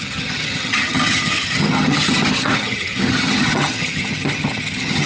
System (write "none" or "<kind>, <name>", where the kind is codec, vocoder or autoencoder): vocoder, HiFi-GAN